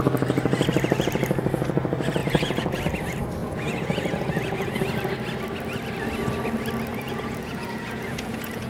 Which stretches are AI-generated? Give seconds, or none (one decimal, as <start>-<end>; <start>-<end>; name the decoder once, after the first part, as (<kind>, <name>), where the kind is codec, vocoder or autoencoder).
2.2-2.8 (vocoder, Vocos); 3.4-4.8; 6.9-8.7

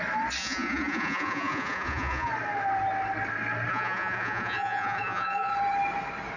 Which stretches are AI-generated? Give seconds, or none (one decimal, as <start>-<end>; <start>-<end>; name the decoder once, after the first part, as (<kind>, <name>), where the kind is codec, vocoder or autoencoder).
0.4-2.3 (vocoder, Vocos); 3.7-5.5

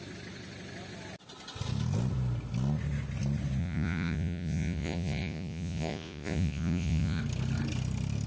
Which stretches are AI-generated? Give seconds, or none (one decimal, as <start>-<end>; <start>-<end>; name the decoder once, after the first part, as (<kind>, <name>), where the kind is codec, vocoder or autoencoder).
3.6-7.2 (vocoder, Vocos)

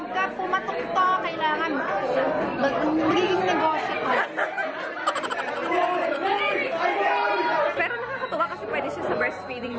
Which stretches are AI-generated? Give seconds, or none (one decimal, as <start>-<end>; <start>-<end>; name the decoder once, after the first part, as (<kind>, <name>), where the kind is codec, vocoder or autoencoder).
none

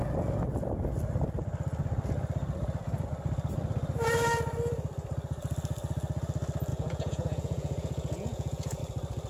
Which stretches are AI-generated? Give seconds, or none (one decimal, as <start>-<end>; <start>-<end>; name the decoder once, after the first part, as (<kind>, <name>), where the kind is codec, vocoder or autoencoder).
6.7-8.8 (vocoder, Vocos)

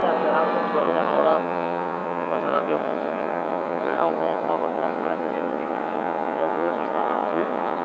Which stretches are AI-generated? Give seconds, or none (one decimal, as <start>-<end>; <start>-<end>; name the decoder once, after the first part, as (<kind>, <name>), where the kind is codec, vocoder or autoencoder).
0.8-7.8 (vocoder, Vocos)

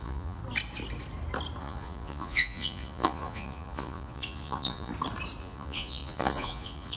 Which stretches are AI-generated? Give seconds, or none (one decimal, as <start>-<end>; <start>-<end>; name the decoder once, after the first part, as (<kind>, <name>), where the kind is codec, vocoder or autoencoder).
0.0-0.4 (vocoder, Vocos); 1.6-4.9; 5.4-7.0

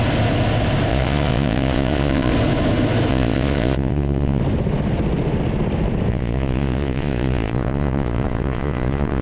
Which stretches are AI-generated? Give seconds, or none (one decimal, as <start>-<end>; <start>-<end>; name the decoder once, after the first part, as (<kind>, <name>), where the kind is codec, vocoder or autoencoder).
0.9-2.3 (vocoder, Vocos); 3.1-4.4; 6.1-9.2